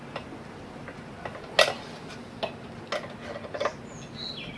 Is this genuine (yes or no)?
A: yes